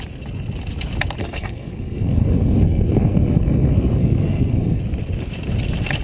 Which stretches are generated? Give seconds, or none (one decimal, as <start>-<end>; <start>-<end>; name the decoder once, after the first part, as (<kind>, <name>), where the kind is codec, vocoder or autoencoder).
1.2-4.8 (codec, SNAC)

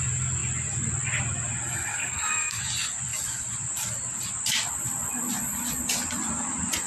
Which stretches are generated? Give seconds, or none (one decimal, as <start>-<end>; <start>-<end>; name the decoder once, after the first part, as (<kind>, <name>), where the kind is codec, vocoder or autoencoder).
1.9-2.6 (codec, SNAC)

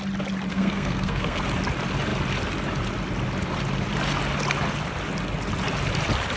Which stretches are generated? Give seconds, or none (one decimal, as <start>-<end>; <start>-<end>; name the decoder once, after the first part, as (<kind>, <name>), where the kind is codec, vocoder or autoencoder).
0.5-1.4 (codec, SNAC)

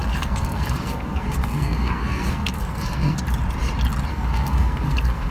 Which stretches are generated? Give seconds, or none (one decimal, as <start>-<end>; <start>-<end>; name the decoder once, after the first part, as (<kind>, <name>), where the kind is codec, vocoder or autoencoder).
0.0-3.2 (codec, SNAC); 4.1-5.3

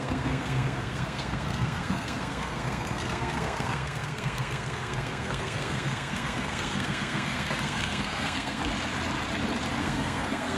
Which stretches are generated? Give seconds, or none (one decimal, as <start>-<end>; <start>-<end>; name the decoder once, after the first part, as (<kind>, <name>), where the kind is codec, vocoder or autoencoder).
0.0-8.6 (codec, SNAC); 9.8-10.6

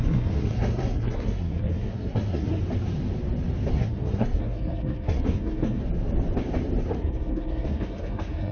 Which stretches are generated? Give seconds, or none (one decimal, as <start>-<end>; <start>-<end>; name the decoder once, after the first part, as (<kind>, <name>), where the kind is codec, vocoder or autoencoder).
0.0-2.6 (codec, SNAC); 3.7-5.8; 6.9-8.5

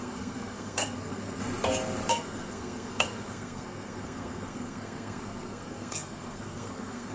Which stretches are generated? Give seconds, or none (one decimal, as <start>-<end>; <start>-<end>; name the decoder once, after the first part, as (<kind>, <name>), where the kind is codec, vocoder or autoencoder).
0.0-1.4 (codec, SNAC); 2.1-7.1